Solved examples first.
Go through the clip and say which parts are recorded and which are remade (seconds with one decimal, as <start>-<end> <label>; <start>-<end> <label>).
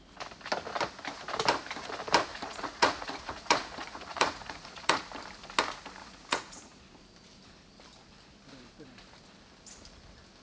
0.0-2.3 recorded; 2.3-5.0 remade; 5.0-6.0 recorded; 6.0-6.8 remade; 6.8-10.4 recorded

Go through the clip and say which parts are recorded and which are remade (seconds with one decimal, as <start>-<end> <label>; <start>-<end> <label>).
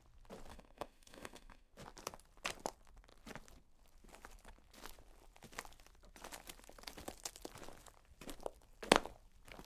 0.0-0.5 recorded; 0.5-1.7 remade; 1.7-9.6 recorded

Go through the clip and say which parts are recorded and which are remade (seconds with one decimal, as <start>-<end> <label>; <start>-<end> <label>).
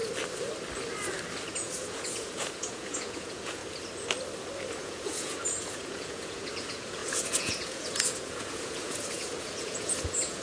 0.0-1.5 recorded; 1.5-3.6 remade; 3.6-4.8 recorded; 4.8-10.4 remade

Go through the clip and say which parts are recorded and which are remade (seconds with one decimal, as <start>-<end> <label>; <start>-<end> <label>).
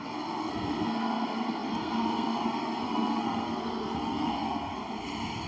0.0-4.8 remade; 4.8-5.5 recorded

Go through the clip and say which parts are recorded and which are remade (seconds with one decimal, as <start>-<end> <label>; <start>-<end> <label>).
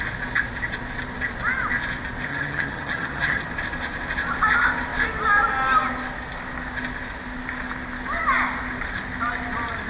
0.0-2.3 recorded; 2.3-3.4 remade; 3.4-9.9 recorded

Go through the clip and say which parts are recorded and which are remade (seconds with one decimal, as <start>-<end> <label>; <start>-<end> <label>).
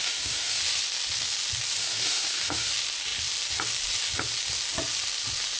0.0-0.6 remade; 0.6-1.8 recorded; 1.8-2.7 remade; 2.7-5.6 recorded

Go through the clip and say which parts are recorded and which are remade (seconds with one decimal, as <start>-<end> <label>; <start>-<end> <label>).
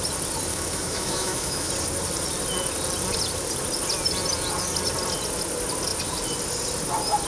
0.0-0.5 recorded; 0.5-1.7 remade; 1.7-7.3 recorded